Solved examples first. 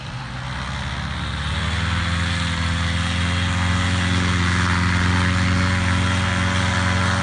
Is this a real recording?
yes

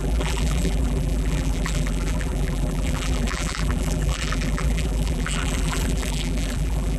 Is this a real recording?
no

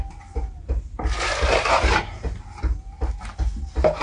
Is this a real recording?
yes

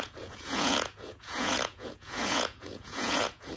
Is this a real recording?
no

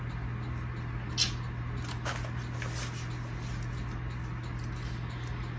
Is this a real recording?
yes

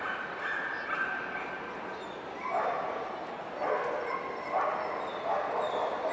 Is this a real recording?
yes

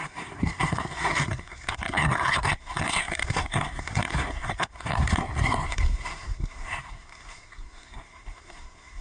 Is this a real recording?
no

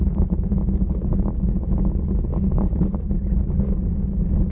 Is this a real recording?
yes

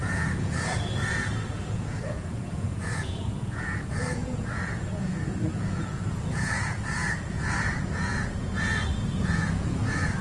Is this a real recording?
no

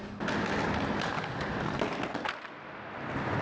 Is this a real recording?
yes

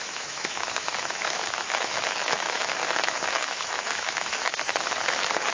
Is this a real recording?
no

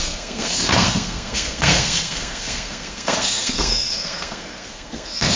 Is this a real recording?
no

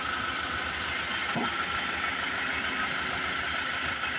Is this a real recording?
yes